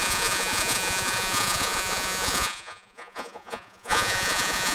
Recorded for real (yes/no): no